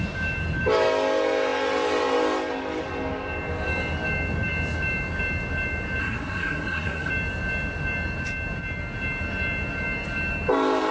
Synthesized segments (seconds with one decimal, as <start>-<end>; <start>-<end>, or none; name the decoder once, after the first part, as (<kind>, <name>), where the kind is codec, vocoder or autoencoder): 6.0-7.1 (codec, SNAC)